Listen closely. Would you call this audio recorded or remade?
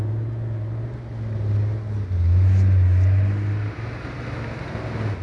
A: recorded